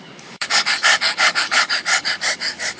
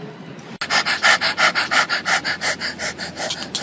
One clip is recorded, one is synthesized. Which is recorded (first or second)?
second